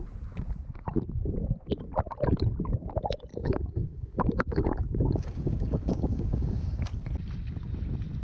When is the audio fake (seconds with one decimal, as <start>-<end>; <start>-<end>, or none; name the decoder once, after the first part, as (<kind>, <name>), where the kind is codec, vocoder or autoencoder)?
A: 3.3-6.8 (codec, DAC)

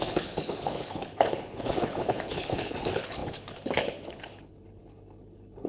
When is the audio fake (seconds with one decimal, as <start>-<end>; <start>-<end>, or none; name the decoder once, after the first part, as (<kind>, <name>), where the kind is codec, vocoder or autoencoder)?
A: 0.0-5.7 (codec, HILCodec)

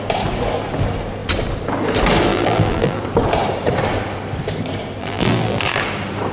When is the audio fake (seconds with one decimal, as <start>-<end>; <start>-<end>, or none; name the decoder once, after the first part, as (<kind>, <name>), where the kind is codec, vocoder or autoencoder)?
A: 2.3-3.0 (vocoder, BigVGAN v2); 5.0-5.8

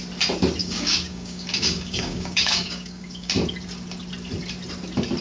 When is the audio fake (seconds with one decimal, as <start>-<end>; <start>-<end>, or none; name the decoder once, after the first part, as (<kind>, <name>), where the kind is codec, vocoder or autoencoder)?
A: 0.6-3.3 (codec, DAC)

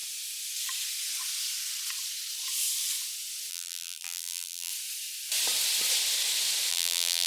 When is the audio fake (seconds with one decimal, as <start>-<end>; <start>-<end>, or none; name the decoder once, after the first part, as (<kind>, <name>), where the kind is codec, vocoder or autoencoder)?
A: 3.5-4.7 (vocoder, BigVGAN v2); 6.7-7.3

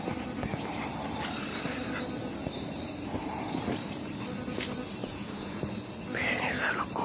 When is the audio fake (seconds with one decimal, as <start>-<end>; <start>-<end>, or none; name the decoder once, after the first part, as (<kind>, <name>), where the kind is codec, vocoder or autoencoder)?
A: 5.0-5.6 (vocoder, Vocos)

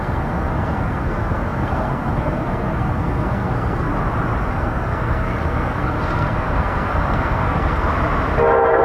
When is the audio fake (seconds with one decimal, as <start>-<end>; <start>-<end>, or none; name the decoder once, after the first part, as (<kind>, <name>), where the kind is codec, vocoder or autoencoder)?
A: 0.0-3.9 (codec, SNAC); 4.5-7.9